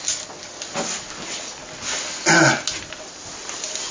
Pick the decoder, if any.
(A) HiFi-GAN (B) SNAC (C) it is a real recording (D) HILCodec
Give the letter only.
C